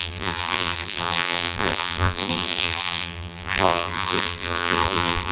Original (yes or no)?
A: no